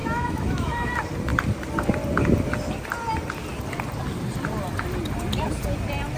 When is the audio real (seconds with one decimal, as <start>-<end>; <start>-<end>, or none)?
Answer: 0.9-6.2